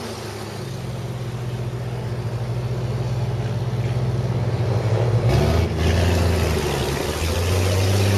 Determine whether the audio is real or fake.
real